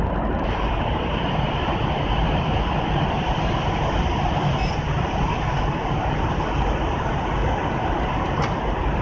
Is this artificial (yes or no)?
no